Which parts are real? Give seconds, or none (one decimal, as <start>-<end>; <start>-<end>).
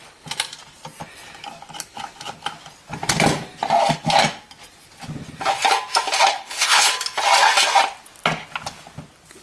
0.0-6.3; 6.9-9.4